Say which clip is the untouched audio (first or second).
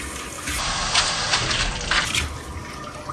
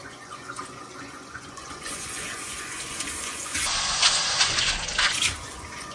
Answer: first